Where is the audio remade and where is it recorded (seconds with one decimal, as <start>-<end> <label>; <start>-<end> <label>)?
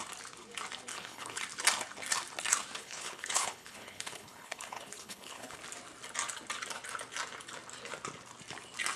0.0-0.9 recorded; 0.9-1.4 remade; 1.4-2.8 recorded; 2.8-5.6 remade; 5.6-9.0 recorded